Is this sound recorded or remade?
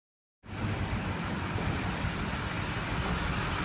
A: recorded